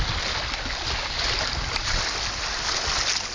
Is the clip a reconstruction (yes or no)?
no